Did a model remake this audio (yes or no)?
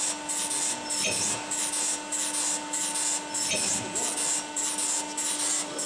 no